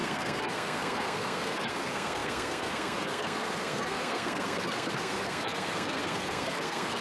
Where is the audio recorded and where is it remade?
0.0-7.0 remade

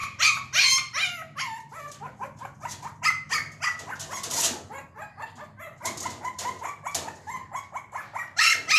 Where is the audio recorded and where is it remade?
0.0-8.8 recorded

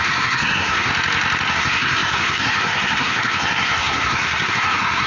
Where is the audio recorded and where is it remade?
0.0-0.9 remade; 0.9-1.5 recorded; 1.5-5.1 remade

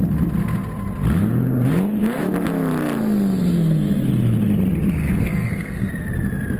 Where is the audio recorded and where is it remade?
0.0-3.5 recorded; 3.5-4.1 remade; 4.1-5.0 recorded; 5.0-5.9 remade; 5.9-6.6 recorded